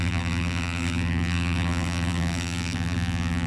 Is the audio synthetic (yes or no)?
yes